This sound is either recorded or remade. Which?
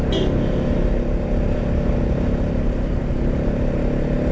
recorded